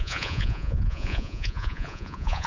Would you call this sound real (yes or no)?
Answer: no